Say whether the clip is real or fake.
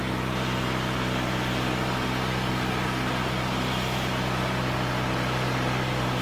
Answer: real